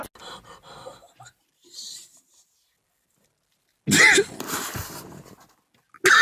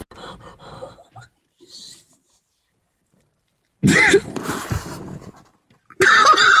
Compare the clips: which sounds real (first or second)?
first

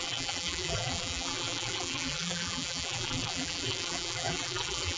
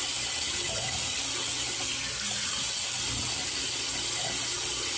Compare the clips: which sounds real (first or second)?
second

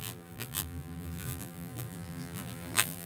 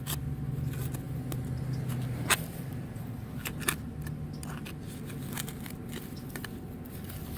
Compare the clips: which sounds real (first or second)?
second